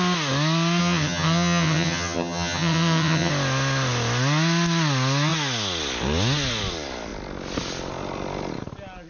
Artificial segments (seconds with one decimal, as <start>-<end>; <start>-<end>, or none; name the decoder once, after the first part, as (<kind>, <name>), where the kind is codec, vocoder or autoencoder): 0.8-3.3 (vocoder, HiFi-GAN)